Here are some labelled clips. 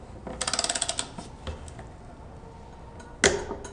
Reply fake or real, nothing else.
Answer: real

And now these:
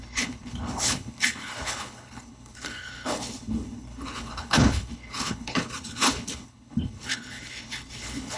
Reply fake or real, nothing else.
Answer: fake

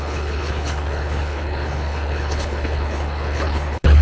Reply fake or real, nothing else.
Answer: fake